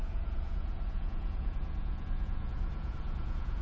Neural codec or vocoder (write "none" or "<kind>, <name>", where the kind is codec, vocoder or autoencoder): vocoder, Vocos